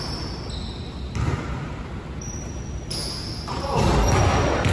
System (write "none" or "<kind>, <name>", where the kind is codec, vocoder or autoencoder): none